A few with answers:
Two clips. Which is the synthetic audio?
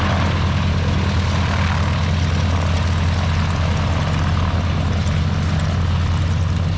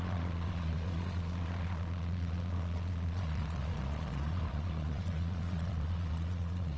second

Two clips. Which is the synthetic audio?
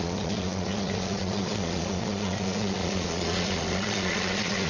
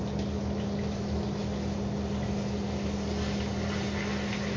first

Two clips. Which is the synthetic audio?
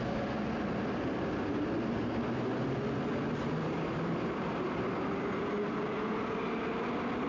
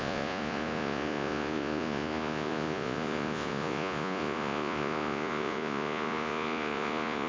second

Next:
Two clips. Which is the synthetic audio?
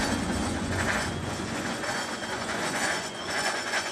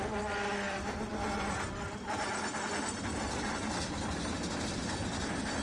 first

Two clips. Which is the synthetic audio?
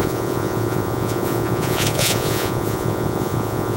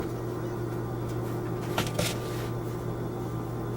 first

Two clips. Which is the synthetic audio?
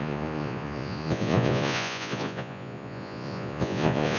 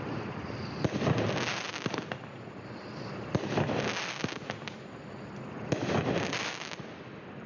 first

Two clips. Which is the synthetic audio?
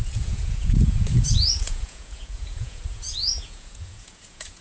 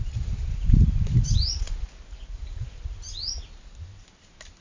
first